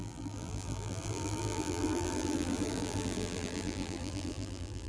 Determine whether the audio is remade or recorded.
remade